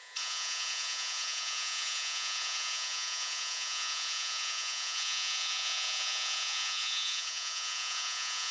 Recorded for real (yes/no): no